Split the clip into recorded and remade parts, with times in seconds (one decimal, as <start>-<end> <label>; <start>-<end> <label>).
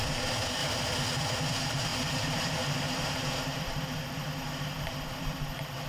0.0-0.6 remade; 0.6-1.5 recorded; 1.5-5.9 remade